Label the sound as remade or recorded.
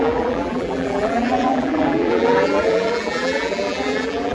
remade